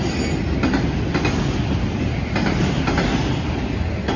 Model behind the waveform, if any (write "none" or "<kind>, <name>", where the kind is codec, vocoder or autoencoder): none